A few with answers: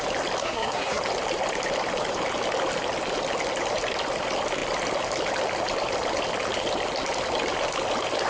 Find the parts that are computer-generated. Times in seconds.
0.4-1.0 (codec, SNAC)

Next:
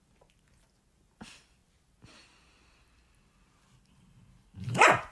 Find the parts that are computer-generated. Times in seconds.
none

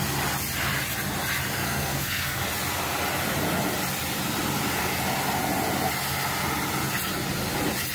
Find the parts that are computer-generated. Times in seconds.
1.6-2.4 (codec, SNAC)

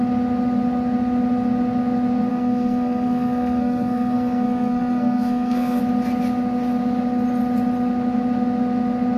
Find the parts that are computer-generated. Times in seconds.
2.3-5.8 (codec, SNAC)

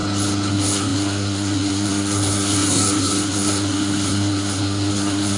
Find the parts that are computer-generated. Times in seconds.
0.5-5.4 (codec, SNAC)